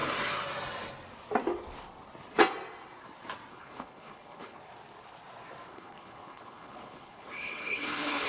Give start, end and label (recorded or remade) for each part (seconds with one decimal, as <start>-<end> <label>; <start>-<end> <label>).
0.0-3.5 recorded; 3.5-4.6 remade; 4.6-5.7 recorded; 5.7-8.3 remade